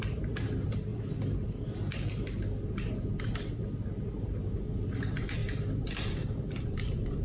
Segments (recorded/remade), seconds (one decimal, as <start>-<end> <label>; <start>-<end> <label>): 0.0-0.9 remade; 0.9-4.2 recorded; 4.2-7.2 remade